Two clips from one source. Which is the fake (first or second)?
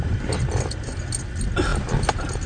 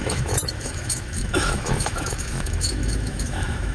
second